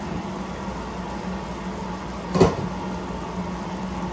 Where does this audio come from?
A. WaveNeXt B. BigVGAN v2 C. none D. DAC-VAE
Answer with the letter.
C